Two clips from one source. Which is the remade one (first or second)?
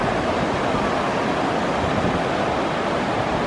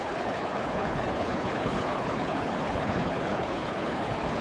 second